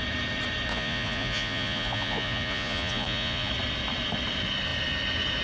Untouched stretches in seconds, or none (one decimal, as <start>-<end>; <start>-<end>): 0.0-0.7; 3.5-5.4